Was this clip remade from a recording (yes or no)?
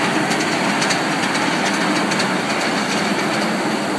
no